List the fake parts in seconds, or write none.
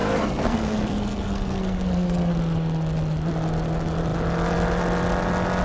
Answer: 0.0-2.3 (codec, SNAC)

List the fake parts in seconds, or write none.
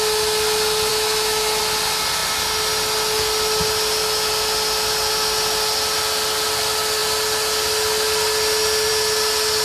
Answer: 0.9-1.6 (autoencoder, DAC-VAE)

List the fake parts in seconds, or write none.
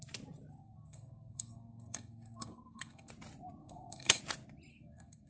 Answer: 0.6-3.1 (codec, SNAC); 3.6-4.2; 4.7-5.3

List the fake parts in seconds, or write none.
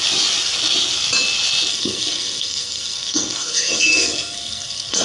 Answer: 1.7-5.0 (codec, SNAC)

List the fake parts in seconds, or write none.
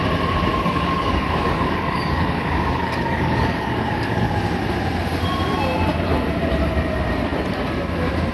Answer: 0.5-4.4 (codec, DAC)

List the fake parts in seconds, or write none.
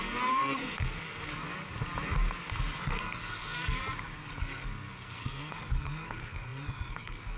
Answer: 0.0-1.3 (codec, SNAC); 2.8-3.8; 4.4-7.4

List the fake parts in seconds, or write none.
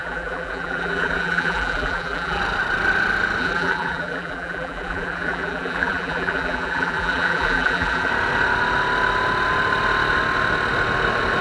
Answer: 0.0-2.4 (vocoder, BigVGAN v2); 3.4-8.1